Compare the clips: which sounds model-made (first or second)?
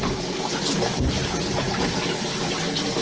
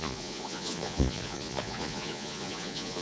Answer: second